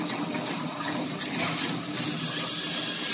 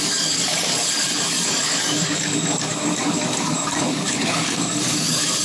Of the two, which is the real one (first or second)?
first